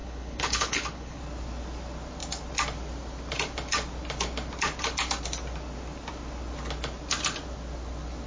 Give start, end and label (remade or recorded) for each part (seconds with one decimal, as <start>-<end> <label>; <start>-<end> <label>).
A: 0.0-1.2 remade; 1.2-8.3 recorded